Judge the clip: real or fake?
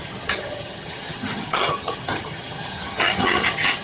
fake